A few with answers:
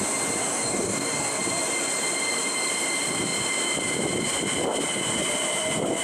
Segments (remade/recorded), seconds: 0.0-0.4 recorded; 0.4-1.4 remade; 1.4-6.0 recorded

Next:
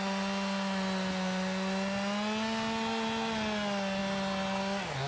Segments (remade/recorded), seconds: 0.0-5.1 recorded

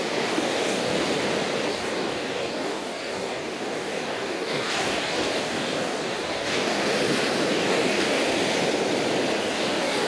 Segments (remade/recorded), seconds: 0.0-0.9 remade; 0.9-1.7 recorded; 1.7-6.8 remade; 6.8-7.5 recorded; 7.5-8.2 remade; 8.2-9.4 recorded; 9.4-10.1 remade

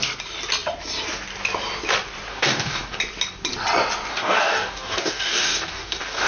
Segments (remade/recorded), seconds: 0.0-2.3 recorded; 2.3-3.0 remade; 3.0-4.1 recorded; 4.1-6.3 remade

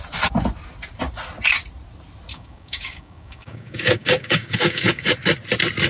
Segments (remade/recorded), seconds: 0.0-2.3 recorded; 2.3-5.1 remade; 5.1-5.9 recorded

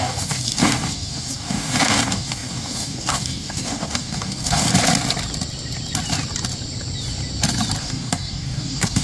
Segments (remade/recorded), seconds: 0.0-4.7 remade; 4.7-7.8 recorded; 7.8-9.0 remade

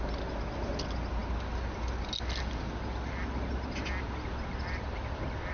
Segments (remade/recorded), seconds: 0.0-5.5 recorded

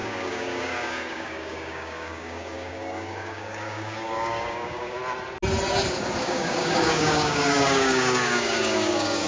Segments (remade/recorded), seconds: 0.0-5.0 remade; 5.0-6.2 recorded; 6.2-9.3 remade